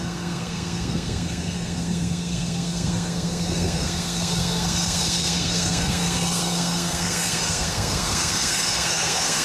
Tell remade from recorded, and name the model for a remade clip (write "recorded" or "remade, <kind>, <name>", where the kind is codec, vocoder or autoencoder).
remade, codec, SNAC